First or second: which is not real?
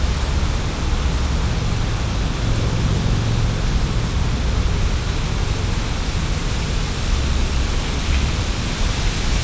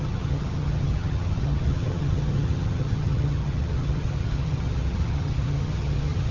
second